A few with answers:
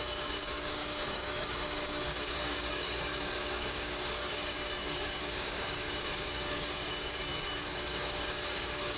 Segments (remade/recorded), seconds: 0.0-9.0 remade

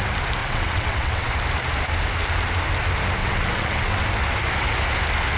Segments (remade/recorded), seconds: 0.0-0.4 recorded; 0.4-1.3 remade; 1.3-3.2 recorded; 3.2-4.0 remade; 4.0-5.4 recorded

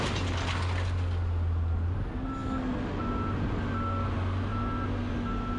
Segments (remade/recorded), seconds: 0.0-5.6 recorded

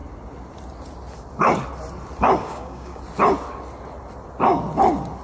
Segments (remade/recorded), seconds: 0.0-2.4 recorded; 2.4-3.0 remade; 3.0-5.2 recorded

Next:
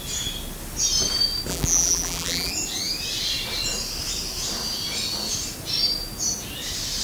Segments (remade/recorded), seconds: 0.0-1.5 recorded; 1.5-2.5 remade; 2.5-7.0 recorded

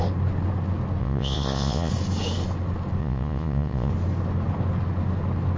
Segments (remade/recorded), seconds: 0.0-1.0 recorded; 1.0-1.9 remade; 1.9-3.0 recorded; 3.0-3.9 remade; 3.9-5.6 recorded